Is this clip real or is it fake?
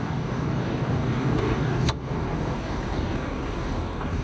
fake